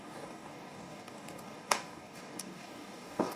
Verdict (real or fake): fake